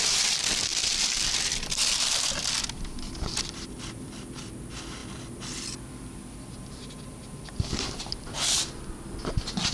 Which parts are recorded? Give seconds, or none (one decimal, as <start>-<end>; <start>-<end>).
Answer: 0.0-0.7; 4.5-5.0; 8.0-9.7